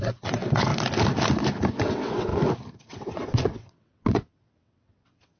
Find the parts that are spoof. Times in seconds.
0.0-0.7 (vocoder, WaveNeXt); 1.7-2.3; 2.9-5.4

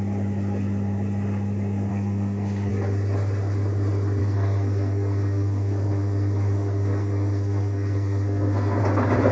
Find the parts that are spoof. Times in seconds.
1.9-2.7 (codec, SNAC); 4.2-8.8

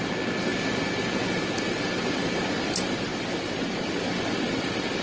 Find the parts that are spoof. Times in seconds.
none

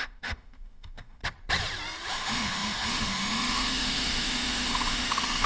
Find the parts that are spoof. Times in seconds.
0.0-1.2 (autoencoder, DAC-VAE); 2.1-5.5

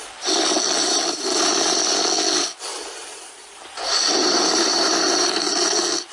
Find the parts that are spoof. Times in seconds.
0.8-1.6 (vocoder, BigVGAN v2); 2.7-3.6; 4.2-6.1

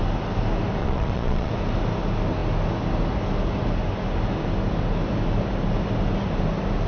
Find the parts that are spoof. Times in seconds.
0.8-1.5 (vocoder, Vocos)